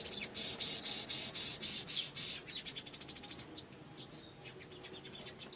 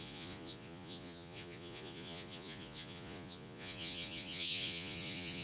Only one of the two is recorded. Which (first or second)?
first